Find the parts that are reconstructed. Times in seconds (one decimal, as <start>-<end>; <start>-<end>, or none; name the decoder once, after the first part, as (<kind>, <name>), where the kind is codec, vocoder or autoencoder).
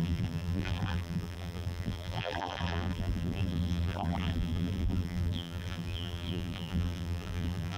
0.0-7.8 (vocoder, BigVGAN v2)